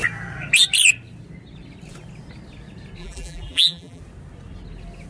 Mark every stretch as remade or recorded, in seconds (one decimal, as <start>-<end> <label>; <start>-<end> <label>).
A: 0.0-3.0 recorded; 3.0-4.0 remade; 4.0-5.1 recorded